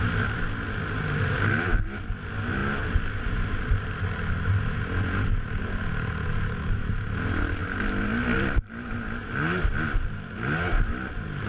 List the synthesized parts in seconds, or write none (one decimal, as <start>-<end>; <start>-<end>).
none